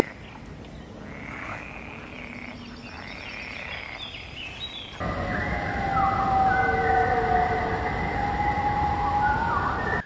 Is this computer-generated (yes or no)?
no